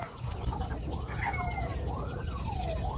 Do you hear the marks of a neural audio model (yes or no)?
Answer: no